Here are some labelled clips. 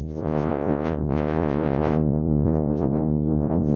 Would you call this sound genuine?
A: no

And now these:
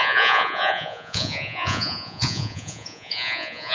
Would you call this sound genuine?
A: no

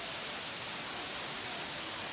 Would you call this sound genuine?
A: yes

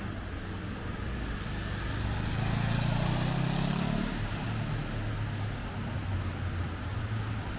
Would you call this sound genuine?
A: yes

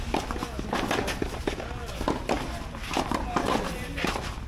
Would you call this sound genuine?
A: yes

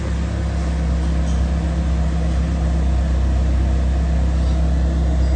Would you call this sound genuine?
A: yes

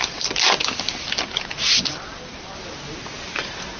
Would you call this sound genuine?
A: yes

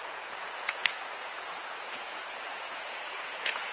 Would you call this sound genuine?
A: no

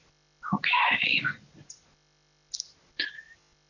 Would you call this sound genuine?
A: yes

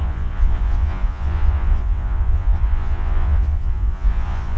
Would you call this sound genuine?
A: no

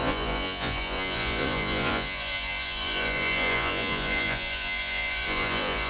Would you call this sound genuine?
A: no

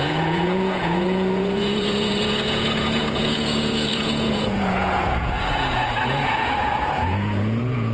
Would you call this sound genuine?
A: no